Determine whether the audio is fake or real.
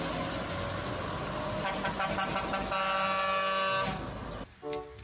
real